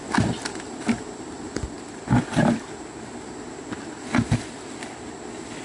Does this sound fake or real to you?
real